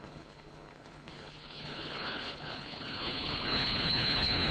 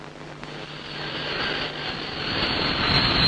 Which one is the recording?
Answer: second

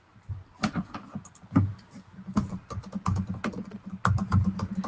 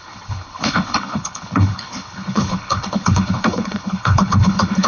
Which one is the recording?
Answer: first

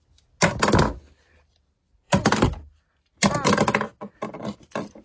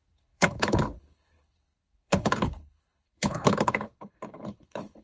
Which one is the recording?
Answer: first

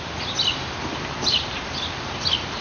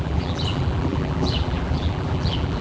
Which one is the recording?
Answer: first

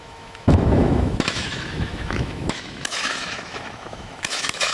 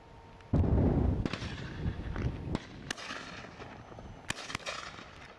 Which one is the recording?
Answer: second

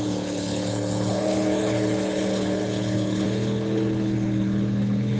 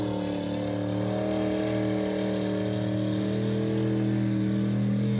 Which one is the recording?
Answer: second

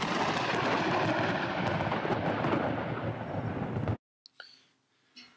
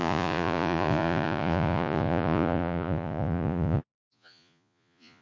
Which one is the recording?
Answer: first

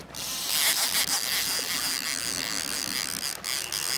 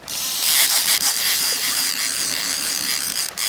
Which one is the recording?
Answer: first